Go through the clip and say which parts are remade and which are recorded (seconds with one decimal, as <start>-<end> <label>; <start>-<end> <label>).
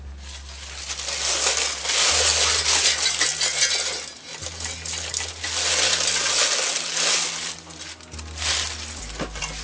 0.0-9.6 recorded